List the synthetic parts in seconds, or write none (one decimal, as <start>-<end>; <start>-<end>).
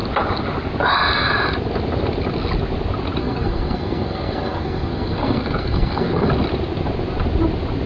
3.2-6.3